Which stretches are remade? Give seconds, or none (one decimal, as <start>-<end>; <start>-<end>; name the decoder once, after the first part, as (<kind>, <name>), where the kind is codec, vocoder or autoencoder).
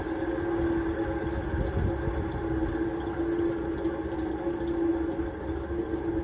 none